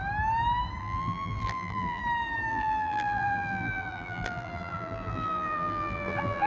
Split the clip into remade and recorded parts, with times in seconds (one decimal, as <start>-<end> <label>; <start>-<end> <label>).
0.0-0.8 recorded; 0.8-2.0 remade; 2.0-2.5 recorded; 2.5-6.5 remade